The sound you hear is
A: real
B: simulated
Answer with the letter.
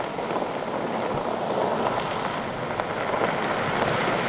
A